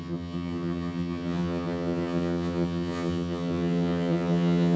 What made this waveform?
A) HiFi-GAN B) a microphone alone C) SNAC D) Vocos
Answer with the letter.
A